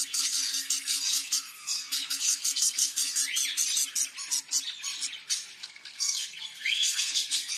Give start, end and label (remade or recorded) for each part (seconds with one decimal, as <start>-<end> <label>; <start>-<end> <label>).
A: 0.0-3.2 remade; 3.2-5.6 recorded; 5.6-7.6 remade